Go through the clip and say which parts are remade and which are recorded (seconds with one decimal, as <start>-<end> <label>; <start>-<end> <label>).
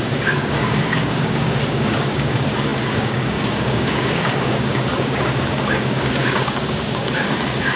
0.0-7.8 remade